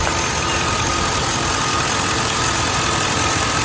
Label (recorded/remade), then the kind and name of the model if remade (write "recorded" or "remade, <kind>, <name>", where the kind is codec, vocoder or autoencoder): remade, vocoder, BigVGAN v2